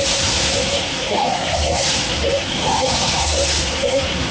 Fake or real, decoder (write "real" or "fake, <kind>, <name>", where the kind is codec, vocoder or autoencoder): fake, codec, SNAC